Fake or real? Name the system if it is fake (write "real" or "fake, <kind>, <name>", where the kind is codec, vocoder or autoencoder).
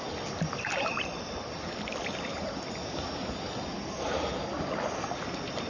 real